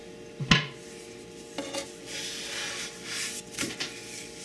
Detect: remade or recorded recorded